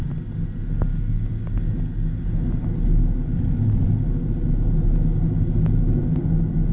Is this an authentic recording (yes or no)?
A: yes